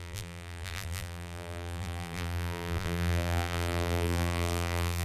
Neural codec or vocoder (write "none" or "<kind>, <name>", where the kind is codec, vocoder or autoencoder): vocoder, BigVGAN v2